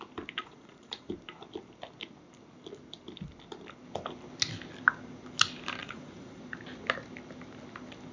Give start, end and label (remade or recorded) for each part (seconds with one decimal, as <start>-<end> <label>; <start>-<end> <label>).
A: 0.0-0.4 recorded; 0.4-1.1 remade; 1.1-5.8 recorded; 5.8-6.4 remade; 6.4-8.1 recorded